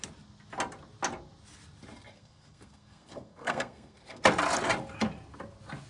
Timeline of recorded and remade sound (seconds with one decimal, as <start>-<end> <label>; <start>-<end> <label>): 0.0-2.1 recorded; 2.1-4.2 remade; 4.2-5.9 recorded